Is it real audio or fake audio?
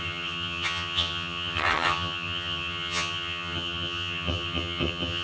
fake